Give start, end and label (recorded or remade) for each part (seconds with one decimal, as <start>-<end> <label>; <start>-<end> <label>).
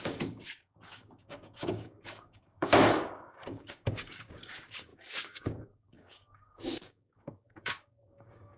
0.0-8.6 remade